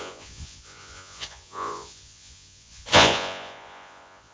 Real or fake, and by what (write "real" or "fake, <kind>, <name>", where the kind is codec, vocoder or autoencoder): fake, vocoder, Vocos